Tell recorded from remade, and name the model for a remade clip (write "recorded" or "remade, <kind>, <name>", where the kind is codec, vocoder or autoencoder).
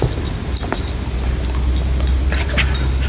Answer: recorded